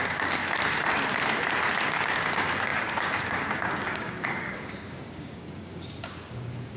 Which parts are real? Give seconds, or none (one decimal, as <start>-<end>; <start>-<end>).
0.4-1.8